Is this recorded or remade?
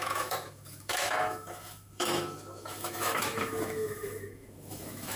remade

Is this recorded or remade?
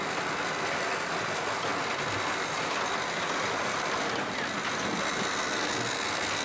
recorded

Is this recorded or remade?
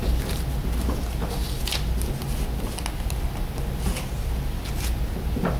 recorded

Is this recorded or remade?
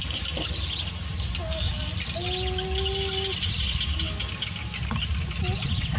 recorded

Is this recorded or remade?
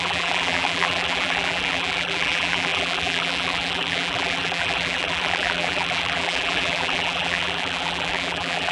remade